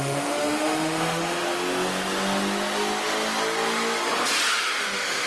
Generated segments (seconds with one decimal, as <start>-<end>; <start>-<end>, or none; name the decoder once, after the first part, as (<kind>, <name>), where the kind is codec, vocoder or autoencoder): 0.0-1.4 (autoencoder, DAC-VAE); 4.6-5.3